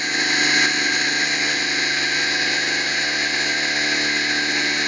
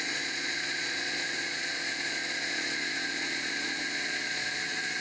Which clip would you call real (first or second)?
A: first